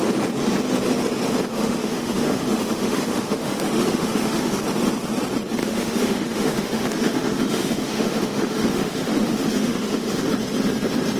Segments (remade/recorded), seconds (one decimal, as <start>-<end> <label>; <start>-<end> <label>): 0.0-1.5 recorded; 1.5-4.6 remade; 4.6-5.6 recorded; 5.6-10.3 remade; 10.3-11.2 recorded